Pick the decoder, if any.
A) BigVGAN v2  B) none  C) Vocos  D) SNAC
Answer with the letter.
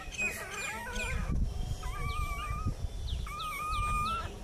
B